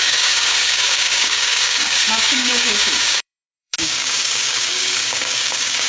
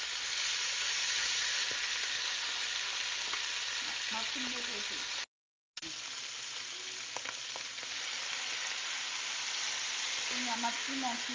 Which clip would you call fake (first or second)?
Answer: first